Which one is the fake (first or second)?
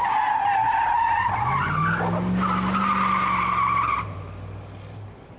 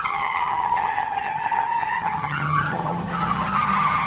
second